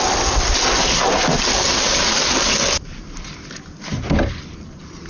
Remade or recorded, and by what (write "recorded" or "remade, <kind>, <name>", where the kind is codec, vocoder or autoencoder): recorded